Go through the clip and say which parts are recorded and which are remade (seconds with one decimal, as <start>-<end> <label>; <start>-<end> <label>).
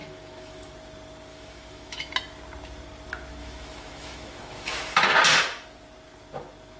0.0-0.7 remade; 0.7-1.3 recorded; 1.3-2.1 remade; 2.1-3.4 recorded; 3.4-5.0 remade; 5.0-6.8 recorded